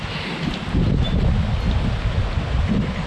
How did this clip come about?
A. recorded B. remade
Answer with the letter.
A